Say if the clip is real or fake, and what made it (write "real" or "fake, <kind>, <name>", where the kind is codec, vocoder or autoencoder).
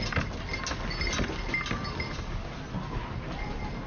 real